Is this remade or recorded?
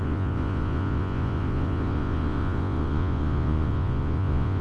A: remade